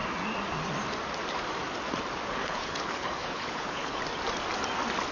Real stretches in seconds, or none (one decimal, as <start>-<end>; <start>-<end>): 0.0-2.4; 4.0-5.1